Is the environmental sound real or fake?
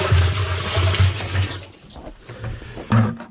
real